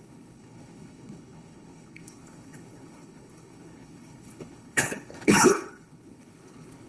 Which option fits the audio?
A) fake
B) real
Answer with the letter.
A